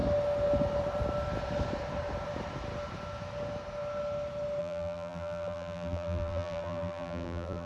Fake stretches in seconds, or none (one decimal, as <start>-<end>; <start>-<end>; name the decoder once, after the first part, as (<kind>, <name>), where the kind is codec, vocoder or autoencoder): 4.6-7.7 (vocoder, BigVGAN v2)